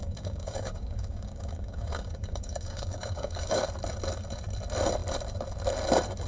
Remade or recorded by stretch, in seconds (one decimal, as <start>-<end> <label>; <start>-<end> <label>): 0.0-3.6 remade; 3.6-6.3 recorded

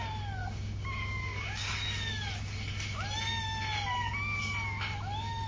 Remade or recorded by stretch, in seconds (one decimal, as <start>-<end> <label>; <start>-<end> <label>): 0.0-0.4 recorded; 0.4-1.9 remade; 1.9-5.5 recorded

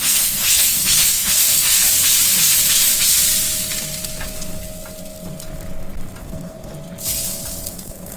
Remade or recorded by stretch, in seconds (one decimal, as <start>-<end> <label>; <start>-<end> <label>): 0.0-1.8 remade; 1.8-6.2 recorded; 6.2-6.7 remade; 6.7-7.7 recorded; 7.7-8.2 remade